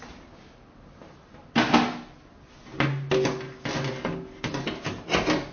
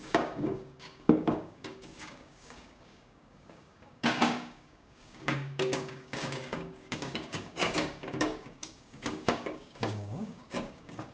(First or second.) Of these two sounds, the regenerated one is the second